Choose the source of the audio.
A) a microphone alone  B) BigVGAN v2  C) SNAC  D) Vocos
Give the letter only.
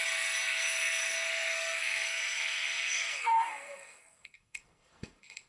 C